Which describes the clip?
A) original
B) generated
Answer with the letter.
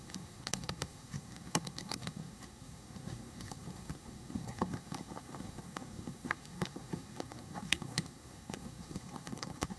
B